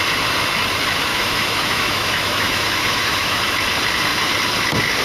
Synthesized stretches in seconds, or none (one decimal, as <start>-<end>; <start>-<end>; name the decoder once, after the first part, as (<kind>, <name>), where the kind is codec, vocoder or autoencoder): 1.1-3.4 (autoencoder, DAC-VAE)